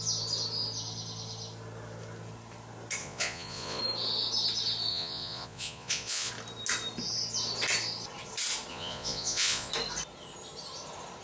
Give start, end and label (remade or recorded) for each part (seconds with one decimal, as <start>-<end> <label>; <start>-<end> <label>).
0.0-3.0 recorded; 3.0-3.8 remade; 3.8-4.9 recorded; 4.9-6.3 remade; 6.3-8.7 recorded; 8.7-9.7 remade; 9.7-11.2 recorded